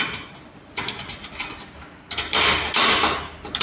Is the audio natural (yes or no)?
yes